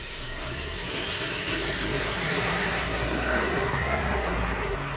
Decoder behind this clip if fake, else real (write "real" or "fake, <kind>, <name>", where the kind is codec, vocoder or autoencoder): fake, codec, SNAC